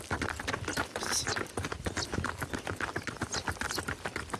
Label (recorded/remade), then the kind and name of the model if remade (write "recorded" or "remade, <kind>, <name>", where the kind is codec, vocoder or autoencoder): recorded